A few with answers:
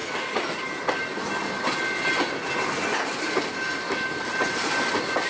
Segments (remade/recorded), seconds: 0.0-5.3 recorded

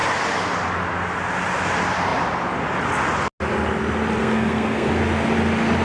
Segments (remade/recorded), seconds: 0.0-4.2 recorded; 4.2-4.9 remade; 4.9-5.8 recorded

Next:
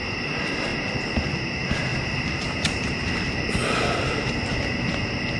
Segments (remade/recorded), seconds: 0.0-1.9 recorded; 1.9-3.5 remade; 3.5-5.4 recorded

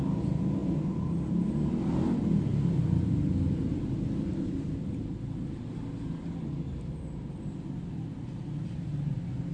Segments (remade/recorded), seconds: 0.0-9.5 recorded

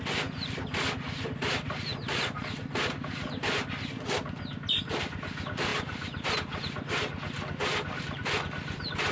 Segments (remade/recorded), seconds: 0.0-9.1 recorded

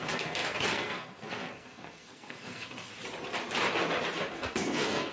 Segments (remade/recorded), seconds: 0.0-2.9 remade; 2.9-4.3 recorded; 4.3-5.1 remade